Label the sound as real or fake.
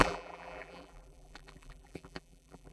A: fake